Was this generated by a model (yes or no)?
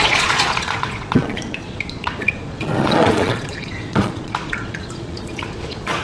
yes